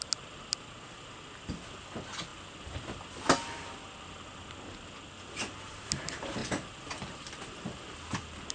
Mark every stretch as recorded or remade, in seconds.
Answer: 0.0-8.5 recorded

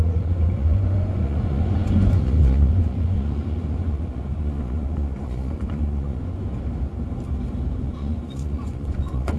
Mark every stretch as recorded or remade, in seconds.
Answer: 0.0-6.4 remade; 6.4-7.8 recorded; 7.8-9.4 remade

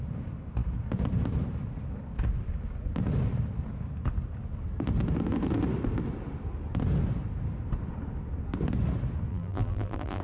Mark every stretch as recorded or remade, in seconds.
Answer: 0.0-9.3 recorded; 9.3-10.2 remade

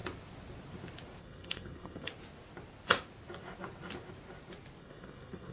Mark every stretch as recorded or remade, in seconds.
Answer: 0.0-1.2 recorded; 1.2-2.1 remade; 2.1-4.8 recorded; 4.8-5.5 remade

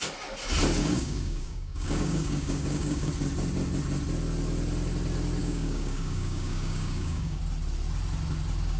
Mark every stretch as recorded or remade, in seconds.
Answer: 0.0-0.8 recorded; 0.8-3.1 remade; 3.1-5.4 recorded; 5.4-7.4 remade; 7.4-8.8 recorded

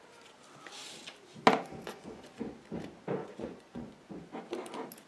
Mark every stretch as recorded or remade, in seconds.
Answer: 0.0-1.9 recorded; 1.9-2.4 remade; 2.4-3.2 recorded; 3.2-4.1 remade; 4.1-5.1 recorded

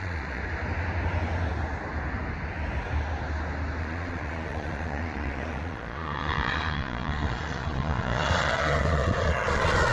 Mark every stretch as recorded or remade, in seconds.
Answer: 0.0-0.4 remade; 0.4-3.8 recorded; 3.8-9.9 remade